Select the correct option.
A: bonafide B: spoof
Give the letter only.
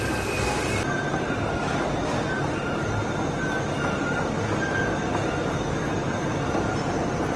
A